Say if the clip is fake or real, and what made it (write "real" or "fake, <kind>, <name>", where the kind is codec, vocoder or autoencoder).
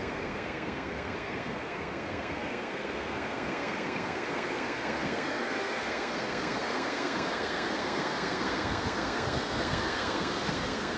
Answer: fake, codec, SNAC